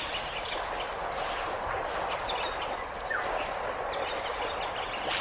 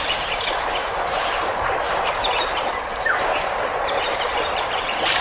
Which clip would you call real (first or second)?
first